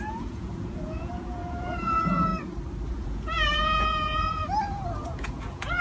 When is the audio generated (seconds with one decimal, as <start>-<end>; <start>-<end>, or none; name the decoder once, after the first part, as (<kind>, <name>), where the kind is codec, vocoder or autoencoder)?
0.0-2.3 (vocoder, Vocos); 2.9-4.4; 5.0-5.8